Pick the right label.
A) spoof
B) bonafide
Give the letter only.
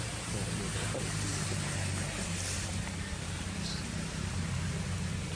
B